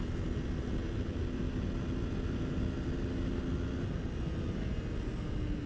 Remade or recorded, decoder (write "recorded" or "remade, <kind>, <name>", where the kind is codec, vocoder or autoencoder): recorded